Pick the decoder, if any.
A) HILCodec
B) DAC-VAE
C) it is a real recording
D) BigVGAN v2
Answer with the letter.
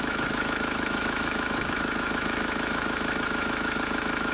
B